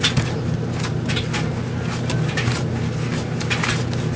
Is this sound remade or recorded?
recorded